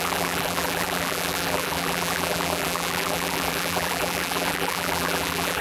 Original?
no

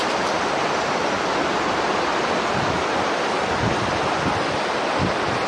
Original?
yes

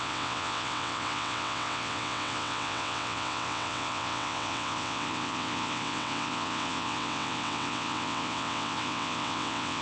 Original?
no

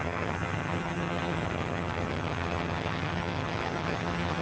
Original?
no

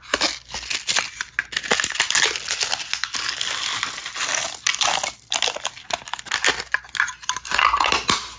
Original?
yes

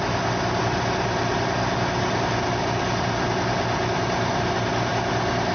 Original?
yes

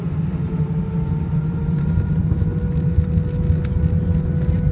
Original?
yes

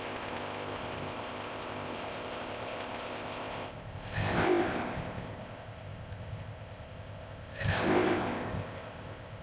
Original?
no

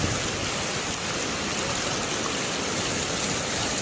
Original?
yes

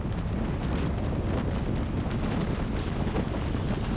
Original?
yes